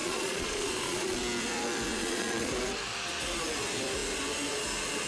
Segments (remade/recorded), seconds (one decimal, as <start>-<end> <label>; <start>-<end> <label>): 0.0-1.2 remade; 1.2-1.9 recorded; 1.9-2.5 remade; 2.5-5.1 recorded